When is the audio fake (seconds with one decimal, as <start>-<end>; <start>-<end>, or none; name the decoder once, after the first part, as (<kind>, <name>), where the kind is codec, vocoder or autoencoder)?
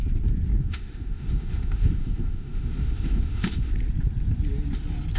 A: 0.6-3.7 (autoencoder, DAC-VAE)